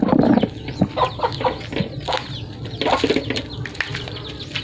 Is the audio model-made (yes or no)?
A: no